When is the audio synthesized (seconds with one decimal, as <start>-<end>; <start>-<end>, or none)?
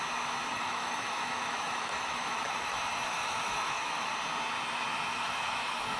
0.5-4.1; 5.1-6.0